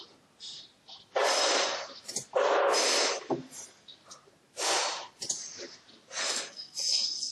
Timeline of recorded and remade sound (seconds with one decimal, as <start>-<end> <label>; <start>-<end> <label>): 0.0-6.2 recorded; 6.2-7.3 remade